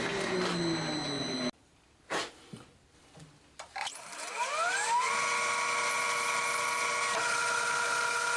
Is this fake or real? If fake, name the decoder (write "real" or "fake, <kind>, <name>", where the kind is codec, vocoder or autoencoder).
real